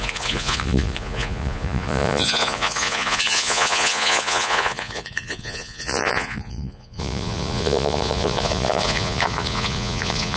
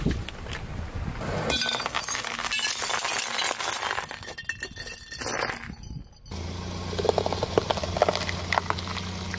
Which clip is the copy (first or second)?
first